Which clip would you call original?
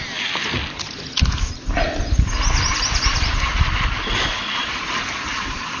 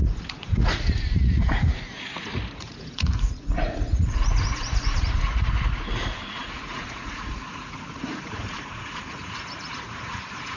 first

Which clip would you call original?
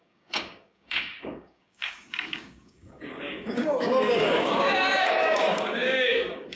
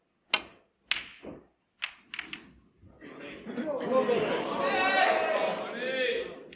second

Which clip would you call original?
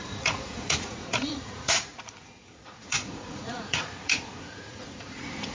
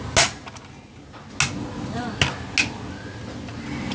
second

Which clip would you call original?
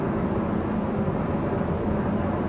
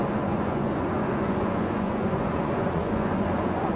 first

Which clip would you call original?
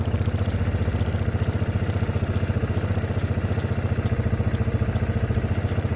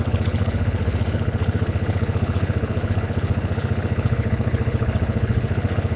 first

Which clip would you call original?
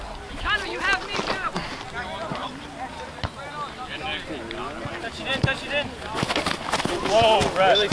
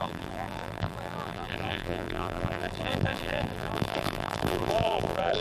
first